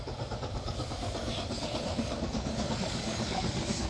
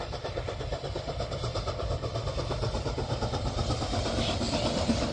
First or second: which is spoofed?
first